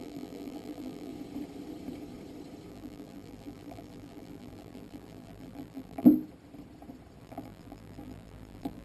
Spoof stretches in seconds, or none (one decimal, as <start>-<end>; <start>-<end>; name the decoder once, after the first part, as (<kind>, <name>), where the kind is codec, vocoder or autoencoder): 0.0-1.1 (vocoder, BigVGAN v2); 2.7-6.1; 7.2-8.8